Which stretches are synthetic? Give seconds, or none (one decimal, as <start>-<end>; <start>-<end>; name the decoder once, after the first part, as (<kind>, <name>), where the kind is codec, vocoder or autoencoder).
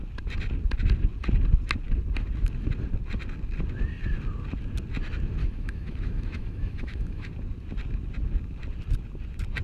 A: 5.4-7.3 (autoencoder, DAC-VAE)